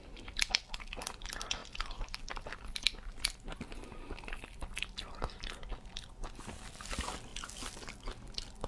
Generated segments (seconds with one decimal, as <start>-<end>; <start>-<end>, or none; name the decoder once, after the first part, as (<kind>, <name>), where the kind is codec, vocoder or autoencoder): none